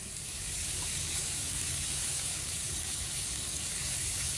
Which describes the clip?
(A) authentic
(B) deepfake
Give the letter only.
B